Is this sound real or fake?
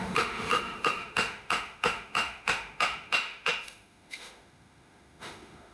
fake